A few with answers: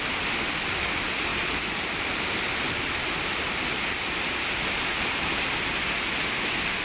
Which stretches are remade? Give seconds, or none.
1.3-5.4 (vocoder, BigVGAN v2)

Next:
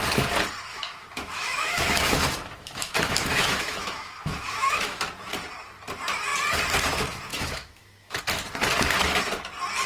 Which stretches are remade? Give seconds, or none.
0.7-5.0 (autoencoder, DAC-VAE); 7.3-8.2

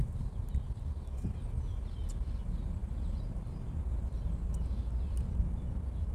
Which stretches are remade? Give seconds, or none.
none

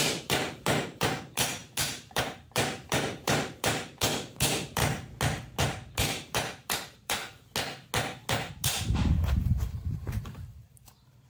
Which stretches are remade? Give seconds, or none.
0.0-4.8 (vocoder, BigVGAN v2); 5.6-7.2; 8.5-11.3

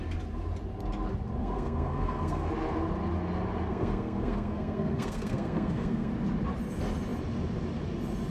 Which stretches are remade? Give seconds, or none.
1.4-2.5 (codec, SNAC); 3.7-6.1